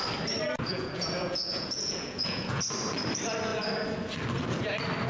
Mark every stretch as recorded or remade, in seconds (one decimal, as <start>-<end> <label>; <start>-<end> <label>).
0.0-0.7 recorded; 0.7-2.6 remade; 2.6-5.1 recorded